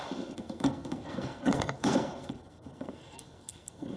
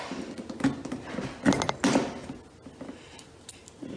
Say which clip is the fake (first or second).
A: first